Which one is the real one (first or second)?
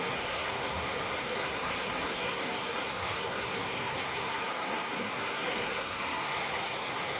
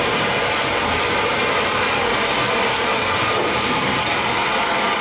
second